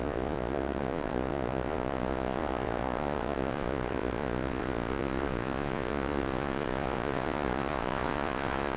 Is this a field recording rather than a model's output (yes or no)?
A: no